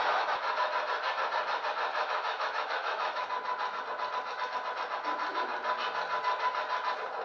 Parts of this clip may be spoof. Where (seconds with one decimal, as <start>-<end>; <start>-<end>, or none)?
1.9-3.3